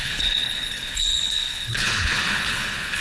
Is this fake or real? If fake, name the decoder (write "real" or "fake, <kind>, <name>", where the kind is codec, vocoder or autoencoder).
fake, codec, HILCodec